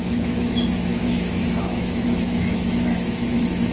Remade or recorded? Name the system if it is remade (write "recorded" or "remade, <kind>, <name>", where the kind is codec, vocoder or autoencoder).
remade, autoencoder, DAC-VAE